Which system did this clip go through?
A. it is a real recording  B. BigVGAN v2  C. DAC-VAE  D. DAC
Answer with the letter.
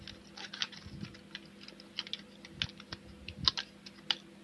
A